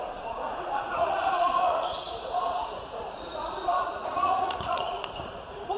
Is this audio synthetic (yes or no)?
yes